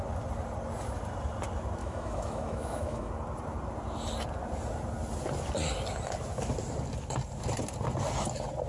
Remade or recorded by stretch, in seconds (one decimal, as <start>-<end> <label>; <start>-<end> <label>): 0.0-1.8 recorded; 1.8-3.1 remade; 3.1-8.7 recorded